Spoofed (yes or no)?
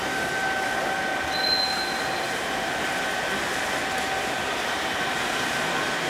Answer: no